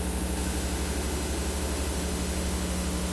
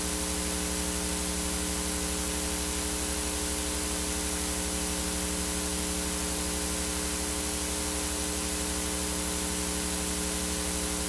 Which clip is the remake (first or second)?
first